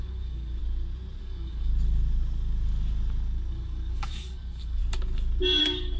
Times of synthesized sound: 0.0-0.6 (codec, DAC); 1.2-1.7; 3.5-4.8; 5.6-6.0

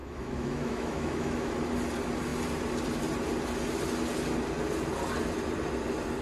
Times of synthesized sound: 0.0-1.5 (autoencoder, DAC-VAE)